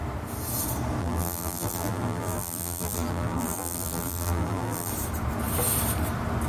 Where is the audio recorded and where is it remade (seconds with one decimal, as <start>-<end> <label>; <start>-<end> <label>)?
0.0-1.0 recorded; 1.0-4.9 remade; 4.9-6.5 recorded